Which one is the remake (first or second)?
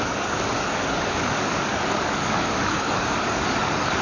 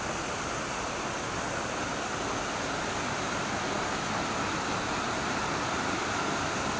first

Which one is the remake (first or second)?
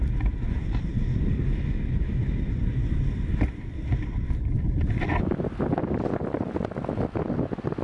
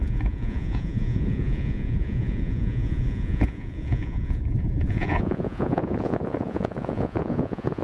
second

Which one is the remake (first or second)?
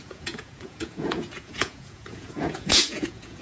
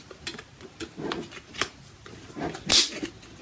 first